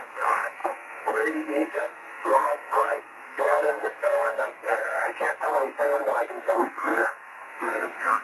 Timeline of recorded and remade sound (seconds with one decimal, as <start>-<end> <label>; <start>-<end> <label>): 0.0-4.8 remade; 4.8-6.3 recorded; 6.3-8.2 remade